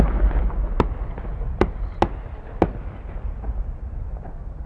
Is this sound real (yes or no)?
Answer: yes